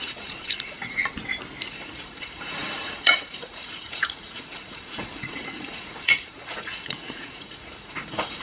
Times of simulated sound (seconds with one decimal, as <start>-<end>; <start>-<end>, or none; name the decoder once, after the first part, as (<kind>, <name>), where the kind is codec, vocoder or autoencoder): 0.0-1.0 (vocoder, Vocos); 1.7-8.4